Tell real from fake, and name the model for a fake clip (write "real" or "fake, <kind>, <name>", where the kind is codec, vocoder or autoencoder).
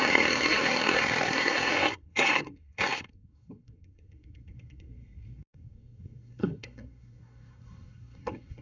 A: fake, codec, SNAC